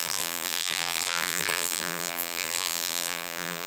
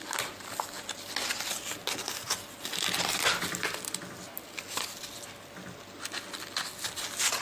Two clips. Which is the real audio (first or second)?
second